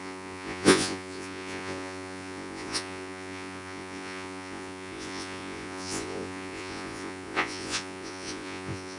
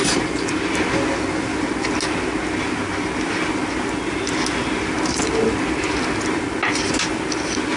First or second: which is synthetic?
first